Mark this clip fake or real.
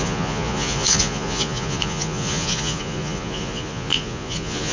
fake